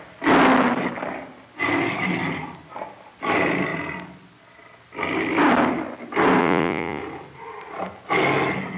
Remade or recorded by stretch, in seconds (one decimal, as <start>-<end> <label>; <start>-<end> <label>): 0.0-6.4 recorded; 6.4-7.0 remade; 7.0-8.8 recorded